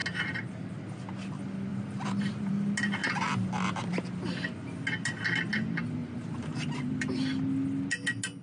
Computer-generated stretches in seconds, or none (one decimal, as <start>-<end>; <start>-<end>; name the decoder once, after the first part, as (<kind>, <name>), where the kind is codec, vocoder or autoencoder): 1.7-2.5 (vocoder, BigVGAN v2); 6.0-6.9